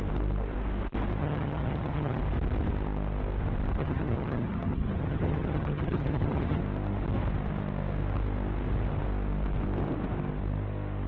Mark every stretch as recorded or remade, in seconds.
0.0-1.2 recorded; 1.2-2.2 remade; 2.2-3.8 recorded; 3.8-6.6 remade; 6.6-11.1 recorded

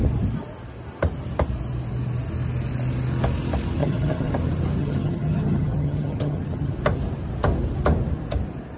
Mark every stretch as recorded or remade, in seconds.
0.0-3.8 recorded; 3.8-4.3 remade; 4.3-4.8 recorded; 4.8-6.7 remade; 6.7-8.8 recorded

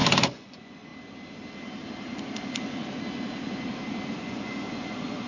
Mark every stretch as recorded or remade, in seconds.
0.0-0.9 remade; 0.9-4.1 recorded; 4.1-5.3 remade

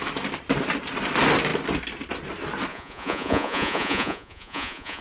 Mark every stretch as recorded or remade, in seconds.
0.0-2.7 recorded; 2.7-5.0 remade

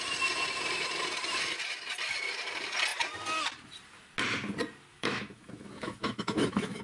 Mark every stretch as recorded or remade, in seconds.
0.0-4.9 recorded; 4.9-6.8 remade

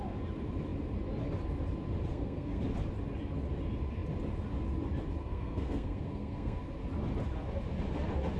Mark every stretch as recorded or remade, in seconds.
0.0-2.1 recorded; 2.1-2.6 remade; 2.6-5.2 recorded; 5.2-6.6 remade; 6.6-8.4 recorded

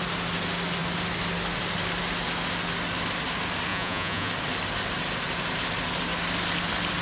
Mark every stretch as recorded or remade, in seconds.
0.0-3.7 recorded; 3.7-4.3 remade; 4.3-7.0 recorded